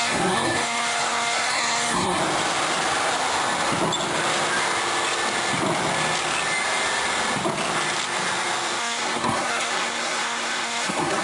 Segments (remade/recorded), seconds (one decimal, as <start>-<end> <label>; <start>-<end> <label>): 0.0-2.2 remade; 2.2-8.8 recorded; 8.8-11.2 remade